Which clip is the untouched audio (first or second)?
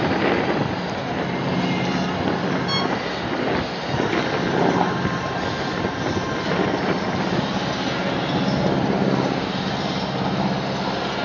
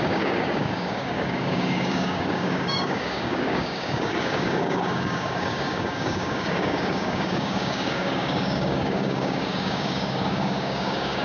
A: first